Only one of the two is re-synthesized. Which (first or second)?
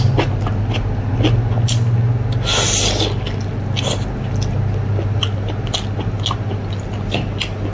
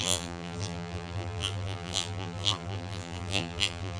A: second